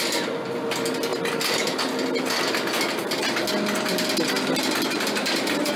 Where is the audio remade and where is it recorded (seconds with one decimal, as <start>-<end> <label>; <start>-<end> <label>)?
0.0-5.8 recorded